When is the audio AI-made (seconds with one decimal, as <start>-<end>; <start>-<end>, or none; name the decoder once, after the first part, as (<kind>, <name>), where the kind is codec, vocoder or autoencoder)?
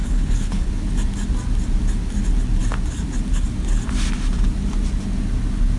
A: 0.0-0.7 (codec, HILCodec)